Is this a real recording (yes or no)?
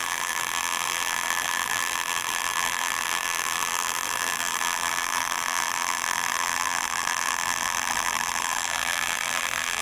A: no